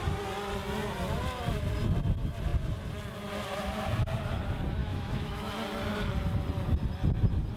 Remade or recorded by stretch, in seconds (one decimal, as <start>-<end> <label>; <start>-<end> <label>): 0.0-4.8 recorded; 4.8-5.5 remade; 5.5-7.6 recorded